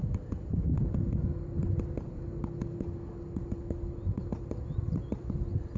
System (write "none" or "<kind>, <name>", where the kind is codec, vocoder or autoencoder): none